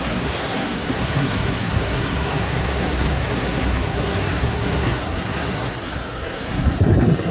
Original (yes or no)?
no